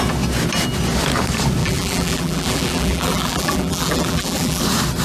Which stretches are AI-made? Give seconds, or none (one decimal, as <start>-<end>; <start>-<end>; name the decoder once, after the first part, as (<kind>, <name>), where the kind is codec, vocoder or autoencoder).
1.6-4.6 (vocoder, BigVGAN v2)